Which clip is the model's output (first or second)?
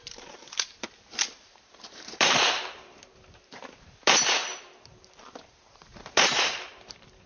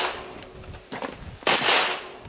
first